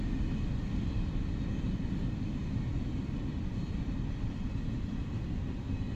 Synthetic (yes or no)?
no